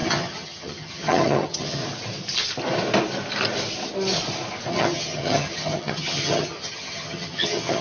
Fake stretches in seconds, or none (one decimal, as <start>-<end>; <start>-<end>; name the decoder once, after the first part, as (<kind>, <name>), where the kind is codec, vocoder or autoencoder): 0.0-1.8 (vocoder, HiFi-GAN); 4.7-7.8